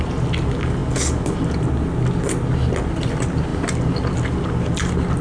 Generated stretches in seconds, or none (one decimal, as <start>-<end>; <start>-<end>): none